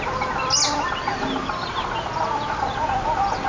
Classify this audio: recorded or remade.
recorded